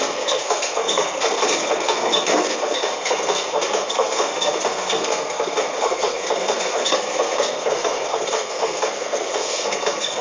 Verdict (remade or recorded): remade